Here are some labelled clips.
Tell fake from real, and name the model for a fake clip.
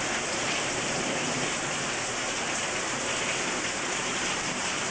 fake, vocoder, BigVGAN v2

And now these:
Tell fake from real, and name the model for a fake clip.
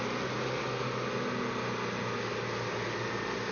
real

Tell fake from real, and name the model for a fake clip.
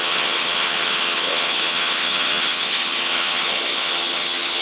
fake, vocoder, HiFi-GAN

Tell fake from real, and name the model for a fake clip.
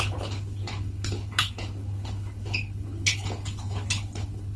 fake, codec, HILCodec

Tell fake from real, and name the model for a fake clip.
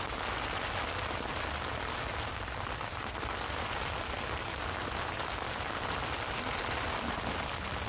real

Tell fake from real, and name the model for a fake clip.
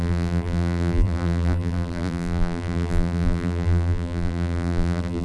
fake, vocoder, BigVGAN v2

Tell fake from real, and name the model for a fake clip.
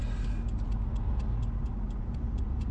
real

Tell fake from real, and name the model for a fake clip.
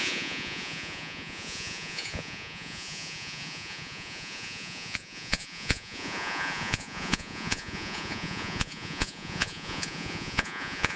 fake, vocoder, Vocos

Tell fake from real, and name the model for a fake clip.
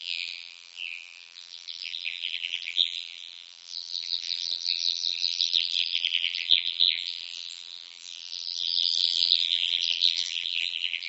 fake, vocoder, BigVGAN v2